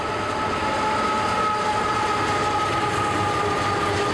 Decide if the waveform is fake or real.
real